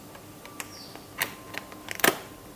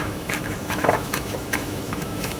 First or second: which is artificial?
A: second